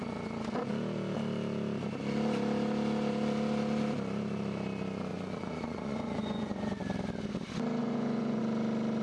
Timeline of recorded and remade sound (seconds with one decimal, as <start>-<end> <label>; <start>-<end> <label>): 0.0-5.1 recorded; 5.1-6.8 remade; 6.8-7.8 recorded; 7.8-8.4 remade; 8.4-9.0 recorded